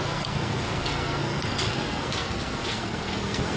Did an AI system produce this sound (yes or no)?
yes